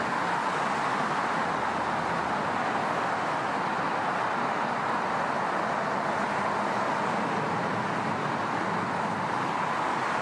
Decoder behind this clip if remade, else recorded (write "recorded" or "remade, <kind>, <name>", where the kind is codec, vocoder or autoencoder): recorded